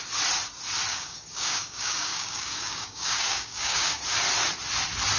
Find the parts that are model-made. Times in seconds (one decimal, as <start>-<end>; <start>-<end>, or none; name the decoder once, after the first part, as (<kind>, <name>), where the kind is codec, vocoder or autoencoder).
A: 0.9-4.0 (codec, DAC)